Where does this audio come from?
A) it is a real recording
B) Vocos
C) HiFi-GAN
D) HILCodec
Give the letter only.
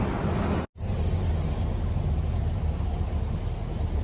A